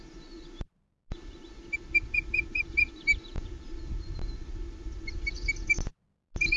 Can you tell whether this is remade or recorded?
recorded